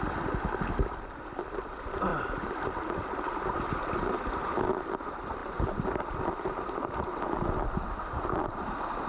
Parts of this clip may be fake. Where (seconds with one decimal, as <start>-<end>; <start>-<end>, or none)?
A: none